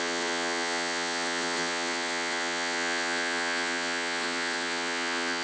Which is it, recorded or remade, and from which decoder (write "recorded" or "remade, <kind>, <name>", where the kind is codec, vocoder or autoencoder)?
remade, vocoder, WaveNeXt